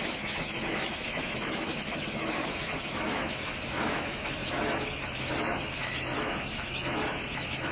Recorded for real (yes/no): no